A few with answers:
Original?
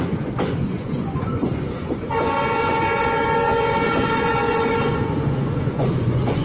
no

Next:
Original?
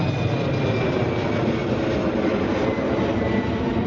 yes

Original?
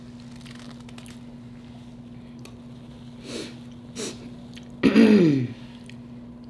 yes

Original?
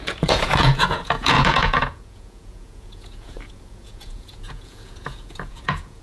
no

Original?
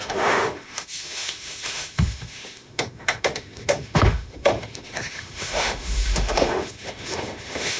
no